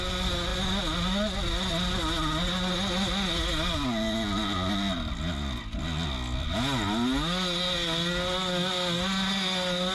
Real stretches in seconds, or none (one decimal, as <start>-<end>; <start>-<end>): 0.0-9.9